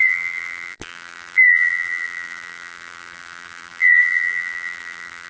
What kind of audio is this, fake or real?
fake